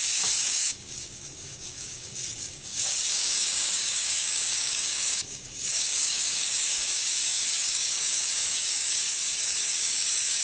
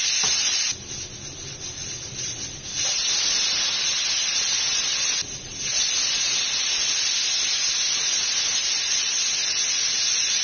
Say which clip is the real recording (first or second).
second